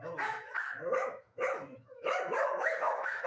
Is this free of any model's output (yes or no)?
no